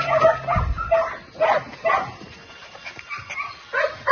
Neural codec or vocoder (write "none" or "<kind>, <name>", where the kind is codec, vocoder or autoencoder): none